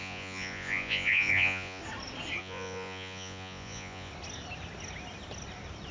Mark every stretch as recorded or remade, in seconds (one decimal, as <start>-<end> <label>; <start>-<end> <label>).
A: 0.0-1.8 remade; 1.8-2.4 recorded; 2.4-4.1 remade; 4.1-5.9 recorded